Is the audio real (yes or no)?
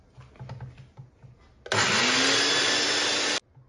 yes